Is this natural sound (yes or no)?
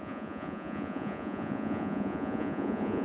no